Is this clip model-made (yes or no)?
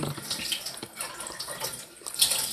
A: no